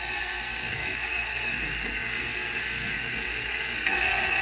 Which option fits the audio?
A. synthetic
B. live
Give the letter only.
A